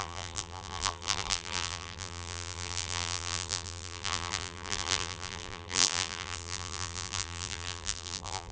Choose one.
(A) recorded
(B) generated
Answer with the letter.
B